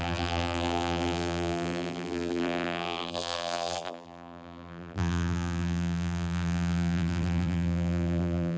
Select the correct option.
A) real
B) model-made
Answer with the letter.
B